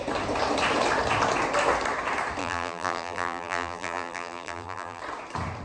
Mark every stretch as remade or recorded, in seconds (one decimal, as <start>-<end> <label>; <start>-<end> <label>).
0.0-2.4 recorded; 2.4-5.0 remade; 5.0-5.6 recorded